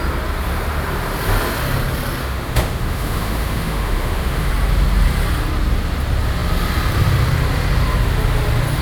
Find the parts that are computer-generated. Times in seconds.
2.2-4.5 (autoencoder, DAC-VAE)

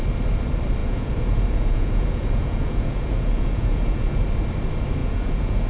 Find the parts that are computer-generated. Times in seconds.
0.8-4.2 (vocoder, Vocos); 5.0-5.7

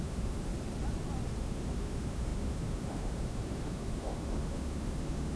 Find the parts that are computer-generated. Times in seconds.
0.0-0.5 (autoencoder, DAC-VAE); 1.4-5.4

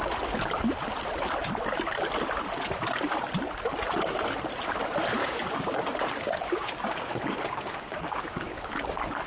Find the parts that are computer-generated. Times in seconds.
5.2-8.6 (codec, DAC)

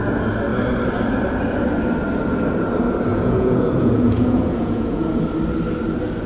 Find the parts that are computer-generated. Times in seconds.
3.1-5.2 (vocoder, Vocos)

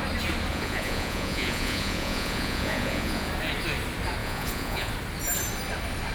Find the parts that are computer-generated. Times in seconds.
0.5-3.3 (vocoder, Vocos); 4.2-4.9